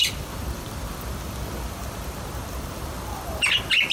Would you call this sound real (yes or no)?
no